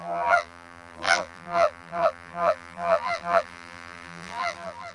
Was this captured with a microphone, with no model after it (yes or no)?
no